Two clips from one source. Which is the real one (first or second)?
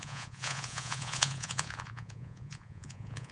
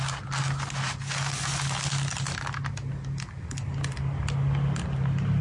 second